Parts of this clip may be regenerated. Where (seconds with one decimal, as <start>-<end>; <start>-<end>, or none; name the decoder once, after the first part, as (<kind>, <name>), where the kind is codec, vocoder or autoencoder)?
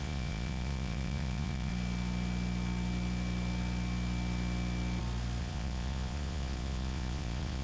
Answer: 0.0-1.7 (vocoder, Vocos); 5.4-7.6